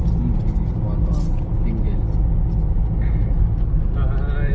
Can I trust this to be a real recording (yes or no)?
yes